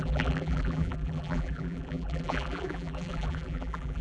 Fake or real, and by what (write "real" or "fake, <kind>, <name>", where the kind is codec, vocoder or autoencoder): fake, vocoder, BigVGAN v2